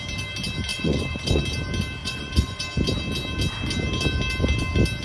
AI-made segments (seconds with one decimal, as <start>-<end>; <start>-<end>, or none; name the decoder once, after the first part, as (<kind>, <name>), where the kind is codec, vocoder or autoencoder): 0.7-1.4 (vocoder, Vocos); 2.0-2.6